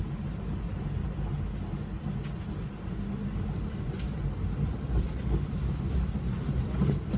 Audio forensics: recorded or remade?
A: recorded